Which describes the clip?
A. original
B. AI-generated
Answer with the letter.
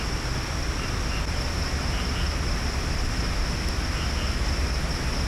A